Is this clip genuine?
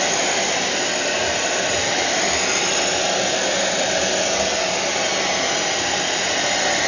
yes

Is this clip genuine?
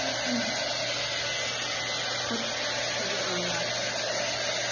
yes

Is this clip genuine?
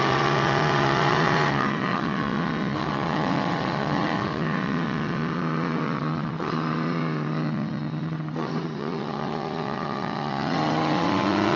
no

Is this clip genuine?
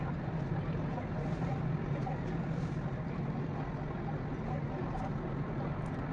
yes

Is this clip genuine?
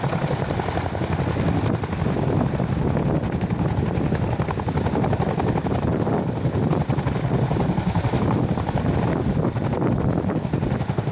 yes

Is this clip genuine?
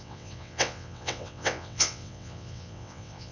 no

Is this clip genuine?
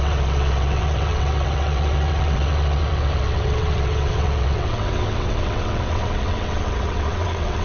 no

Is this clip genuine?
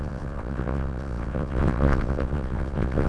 no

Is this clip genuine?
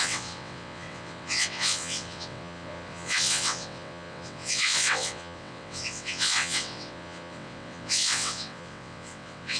no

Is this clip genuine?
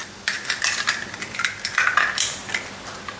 yes